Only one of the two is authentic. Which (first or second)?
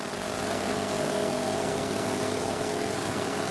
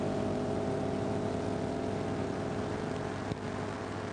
second